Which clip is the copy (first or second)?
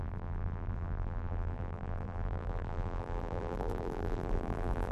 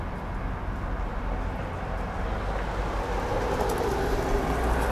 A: first